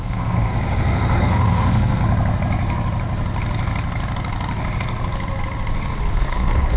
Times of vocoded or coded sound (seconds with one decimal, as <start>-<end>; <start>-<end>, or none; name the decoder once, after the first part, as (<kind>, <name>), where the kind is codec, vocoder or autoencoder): 0.0-0.5 (codec, SNAC); 1.2-2.0; 6.1-6.8